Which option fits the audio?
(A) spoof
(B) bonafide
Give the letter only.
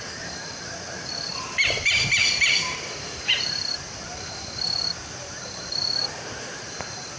A